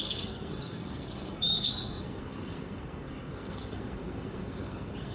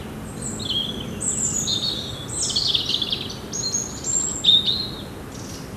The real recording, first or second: second